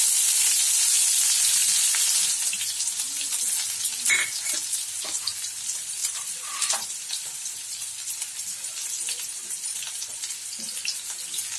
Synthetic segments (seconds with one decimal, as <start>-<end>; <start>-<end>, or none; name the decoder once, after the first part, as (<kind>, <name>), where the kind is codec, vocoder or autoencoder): 1.6-2.3 (vocoder, BigVGAN v2); 6.0-11.2